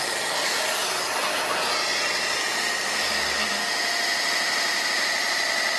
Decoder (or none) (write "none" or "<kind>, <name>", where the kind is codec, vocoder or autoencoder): none